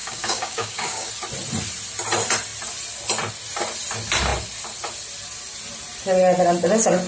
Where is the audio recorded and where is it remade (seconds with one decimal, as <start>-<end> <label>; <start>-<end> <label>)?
0.0-1.1 remade; 1.1-7.1 recorded